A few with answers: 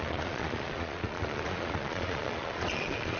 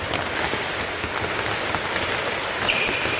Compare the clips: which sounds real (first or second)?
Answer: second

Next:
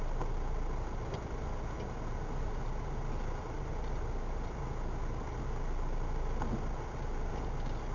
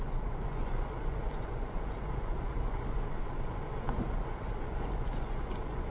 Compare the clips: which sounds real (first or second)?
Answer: first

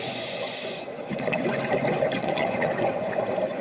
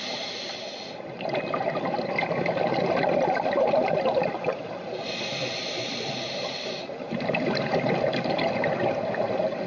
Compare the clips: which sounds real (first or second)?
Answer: second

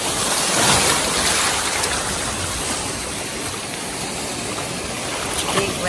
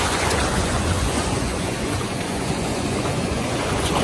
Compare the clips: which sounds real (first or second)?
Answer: first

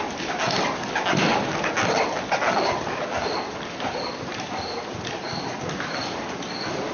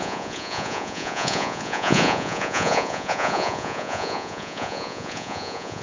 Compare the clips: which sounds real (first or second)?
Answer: first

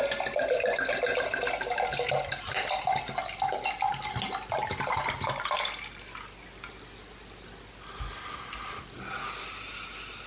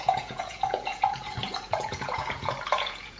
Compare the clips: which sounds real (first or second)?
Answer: first